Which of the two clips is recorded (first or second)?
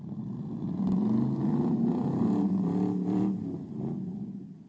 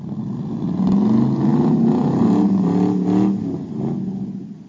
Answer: second